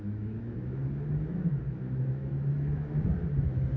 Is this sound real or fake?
fake